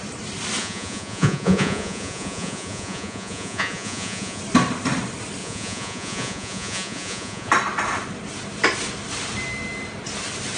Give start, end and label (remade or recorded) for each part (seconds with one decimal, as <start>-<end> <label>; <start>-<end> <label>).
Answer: 0.0-0.6 recorded; 0.6-4.4 remade; 4.4-5.4 recorded; 5.4-7.5 remade; 7.5-10.6 recorded